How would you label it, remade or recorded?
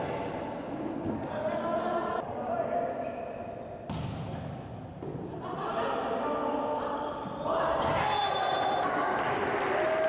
recorded